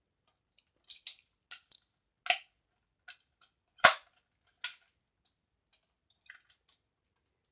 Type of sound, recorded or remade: recorded